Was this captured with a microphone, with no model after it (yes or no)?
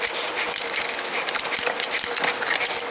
yes